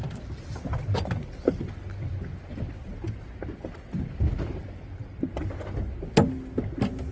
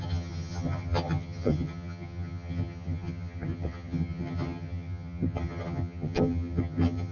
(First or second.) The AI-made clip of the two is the second